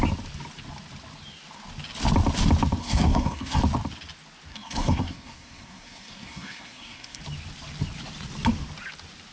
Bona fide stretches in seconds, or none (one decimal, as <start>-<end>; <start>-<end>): 0.0-2.8; 3.6-4.5; 7.2-9.3